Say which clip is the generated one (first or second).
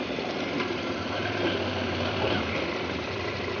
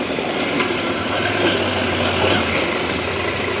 first